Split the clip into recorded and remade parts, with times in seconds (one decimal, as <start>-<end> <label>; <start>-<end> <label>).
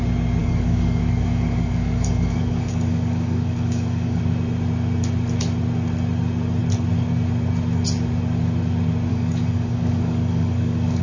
0.0-0.4 recorded; 0.4-4.2 remade; 4.2-9.1 recorded; 9.1-11.0 remade